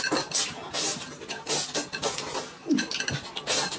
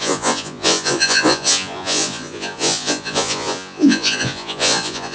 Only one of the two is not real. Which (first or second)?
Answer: second